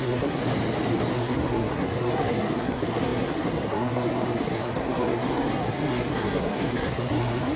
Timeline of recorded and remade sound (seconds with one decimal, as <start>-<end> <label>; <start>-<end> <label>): 0.0-0.4 remade; 0.4-1.1 recorded; 1.1-7.6 remade